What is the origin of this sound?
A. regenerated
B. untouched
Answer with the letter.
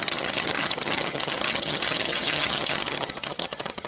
A